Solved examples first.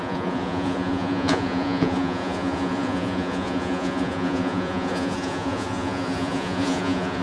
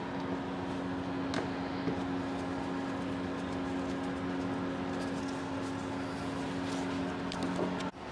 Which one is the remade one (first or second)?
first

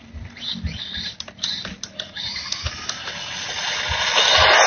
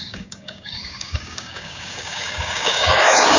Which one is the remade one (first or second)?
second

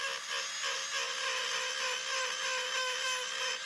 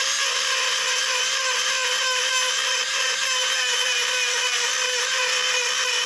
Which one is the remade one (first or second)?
second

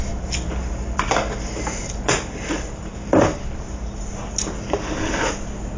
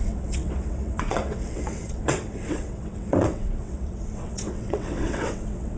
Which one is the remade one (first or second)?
second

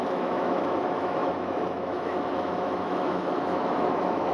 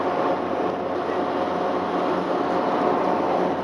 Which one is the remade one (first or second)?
first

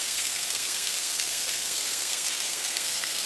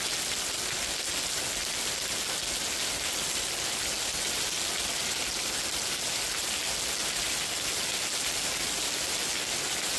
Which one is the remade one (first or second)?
first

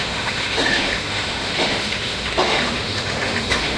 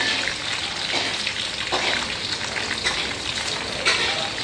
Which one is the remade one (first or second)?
first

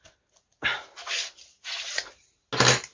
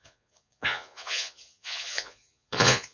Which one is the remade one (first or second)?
second